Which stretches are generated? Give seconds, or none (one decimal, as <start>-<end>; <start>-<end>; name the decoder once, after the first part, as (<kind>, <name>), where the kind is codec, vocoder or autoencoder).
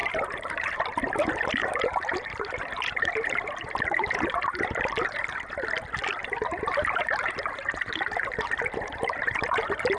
0.0-0.8 (vocoder, BigVGAN v2); 1.6-4.8; 6.2-10.0